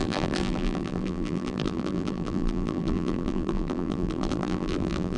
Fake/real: fake